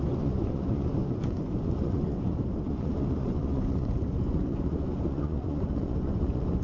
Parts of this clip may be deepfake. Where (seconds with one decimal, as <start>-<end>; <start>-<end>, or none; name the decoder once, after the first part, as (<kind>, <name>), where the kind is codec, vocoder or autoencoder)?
0.0-6.6 (vocoder, Vocos)